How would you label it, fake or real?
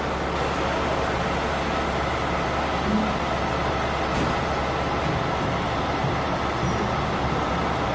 real